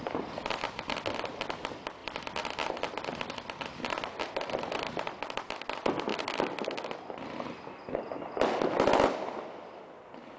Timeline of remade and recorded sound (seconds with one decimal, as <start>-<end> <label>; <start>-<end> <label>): 0.0-10.4 recorded

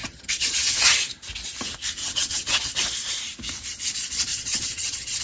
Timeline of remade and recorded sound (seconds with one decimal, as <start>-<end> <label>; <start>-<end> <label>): 0.0-1.0 remade; 1.0-2.0 recorded; 2.0-2.7 remade; 2.7-4.3 recorded; 4.3-5.2 remade

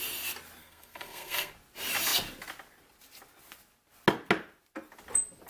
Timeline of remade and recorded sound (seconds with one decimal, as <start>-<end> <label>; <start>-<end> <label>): 0.0-0.6 recorded; 0.6-1.5 remade; 1.5-5.5 recorded

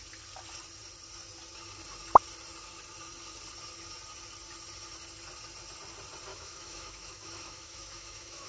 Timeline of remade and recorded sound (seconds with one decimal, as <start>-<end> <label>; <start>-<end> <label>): 0.0-6.3 recorded; 6.3-8.5 remade

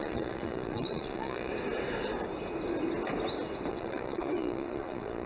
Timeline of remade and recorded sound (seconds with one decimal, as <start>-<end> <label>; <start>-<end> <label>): 0.0-1.5 remade; 1.5-3.7 recorded; 3.7-5.3 remade

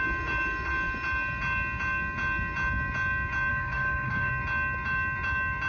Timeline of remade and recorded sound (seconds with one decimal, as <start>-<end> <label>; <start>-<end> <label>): 0.0-3.5 recorded; 3.5-4.3 remade; 4.3-5.7 recorded

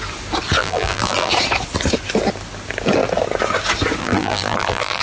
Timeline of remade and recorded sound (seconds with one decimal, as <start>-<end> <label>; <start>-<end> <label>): 0.0-0.6 recorded; 0.6-1.3 remade; 1.3-4.0 recorded; 4.0-5.0 remade